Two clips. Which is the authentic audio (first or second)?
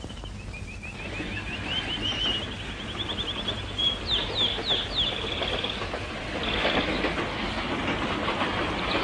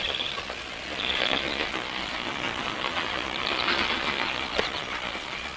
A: first